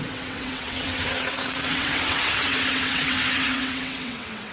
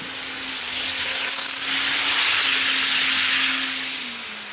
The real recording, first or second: second